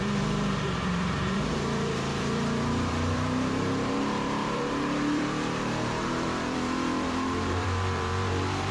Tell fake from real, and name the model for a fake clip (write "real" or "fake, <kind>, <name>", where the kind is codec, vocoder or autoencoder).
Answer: fake, vocoder, BigVGAN v2